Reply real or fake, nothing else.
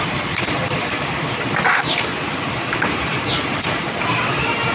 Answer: fake